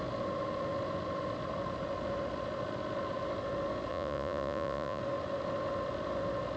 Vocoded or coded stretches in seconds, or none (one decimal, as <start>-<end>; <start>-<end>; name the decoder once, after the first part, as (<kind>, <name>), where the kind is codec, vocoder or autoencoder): 3.9-5.0 (vocoder, Vocos)